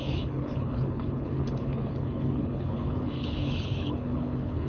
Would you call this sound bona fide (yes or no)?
no